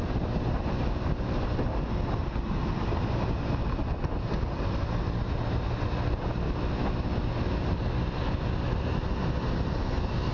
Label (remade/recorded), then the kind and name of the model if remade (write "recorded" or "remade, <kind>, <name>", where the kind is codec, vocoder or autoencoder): recorded